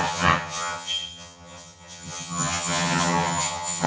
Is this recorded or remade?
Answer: remade